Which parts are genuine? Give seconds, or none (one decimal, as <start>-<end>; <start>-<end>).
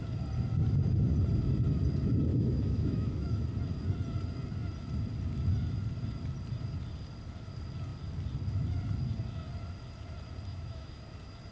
0.0-2.3; 3.4-10.5; 11.0-11.5